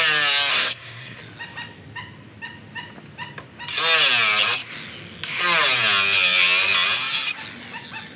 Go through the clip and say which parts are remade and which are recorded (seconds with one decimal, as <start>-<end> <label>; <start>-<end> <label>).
0.0-0.5 recorded; 0.5-1.2 remade; 1.2-8.2 recorded